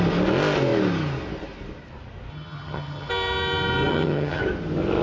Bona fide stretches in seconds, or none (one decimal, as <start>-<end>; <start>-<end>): 0.0-2.3; 3.1-3.9; 4.4-5.0